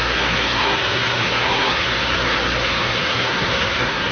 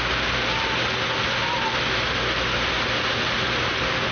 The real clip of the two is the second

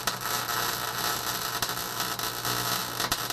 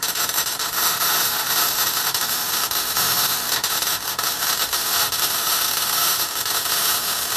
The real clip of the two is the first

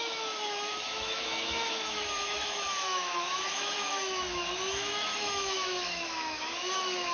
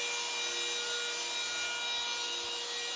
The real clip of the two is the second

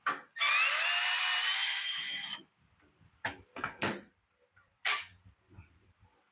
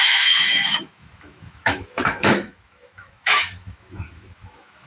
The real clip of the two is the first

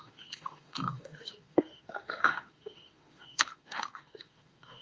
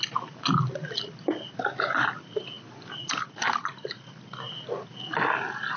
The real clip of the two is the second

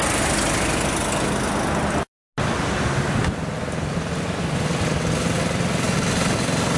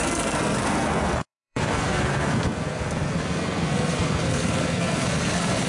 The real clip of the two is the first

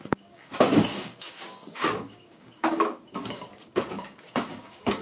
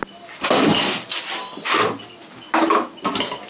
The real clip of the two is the second